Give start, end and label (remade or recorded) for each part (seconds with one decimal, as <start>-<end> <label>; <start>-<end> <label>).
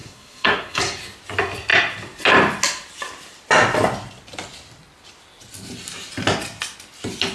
0.0-0.8 remade; 0.8-7.3 recorded